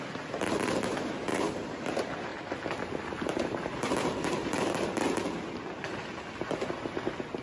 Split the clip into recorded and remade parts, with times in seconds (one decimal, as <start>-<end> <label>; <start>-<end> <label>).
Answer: 0.0-1.3 recorded; 1.3-1.8 remade; 1.8-7.4 recorded